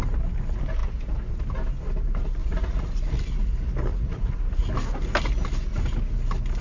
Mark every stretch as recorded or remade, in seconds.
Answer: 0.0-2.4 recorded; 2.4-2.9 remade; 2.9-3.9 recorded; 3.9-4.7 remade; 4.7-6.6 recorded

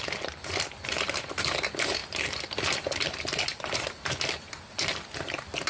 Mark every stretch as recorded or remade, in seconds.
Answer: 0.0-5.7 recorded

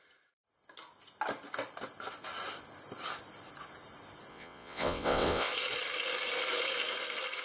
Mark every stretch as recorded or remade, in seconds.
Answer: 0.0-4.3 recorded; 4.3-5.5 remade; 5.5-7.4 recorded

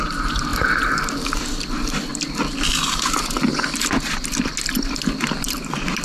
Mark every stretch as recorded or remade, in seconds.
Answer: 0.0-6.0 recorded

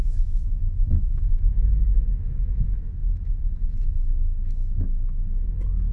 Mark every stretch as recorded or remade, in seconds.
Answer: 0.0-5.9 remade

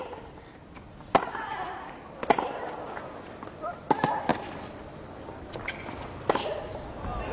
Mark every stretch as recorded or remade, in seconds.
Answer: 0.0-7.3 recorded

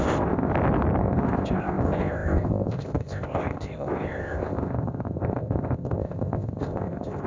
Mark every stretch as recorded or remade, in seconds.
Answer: 0.0-0.5 remade; 0.5-1.0 recorded; 1.0-7.3 remade

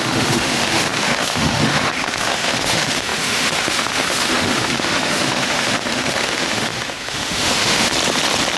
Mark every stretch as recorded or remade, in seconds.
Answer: 0.0-7.9 remade; 7.9-8.6 recorded